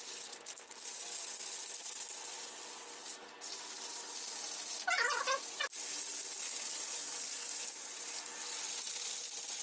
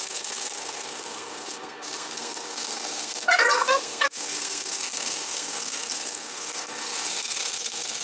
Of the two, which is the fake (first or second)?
second